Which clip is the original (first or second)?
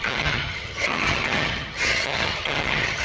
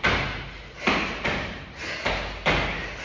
second